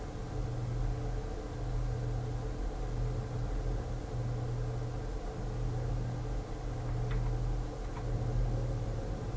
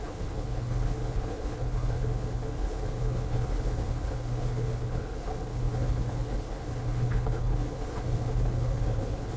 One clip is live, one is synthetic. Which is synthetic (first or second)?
second